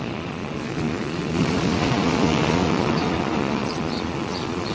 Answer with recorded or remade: remade